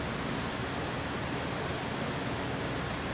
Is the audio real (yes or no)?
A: yes